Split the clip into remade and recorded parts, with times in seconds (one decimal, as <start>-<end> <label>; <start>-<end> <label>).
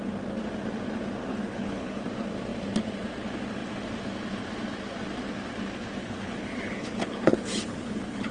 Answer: 0.0-1.3 recorded; 1.3-2.0 remade; 2.0-6.0 recorded; 6.0-8.3 remade